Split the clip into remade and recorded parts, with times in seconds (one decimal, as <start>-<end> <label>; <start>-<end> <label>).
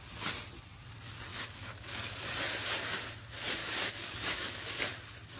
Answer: 0.0-1.3 recorded; 1.3-2.3 remade; 2.3-3.6 recorded; 3.6-4.8 remade; 4.8-5.4 recorded